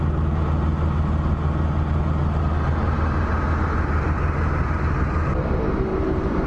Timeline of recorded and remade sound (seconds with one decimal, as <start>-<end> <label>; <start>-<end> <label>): 0.0-2.8 recorded; 2.8-4.0 remade; 4.0-5.9 recorded; 5.9-6.5 remade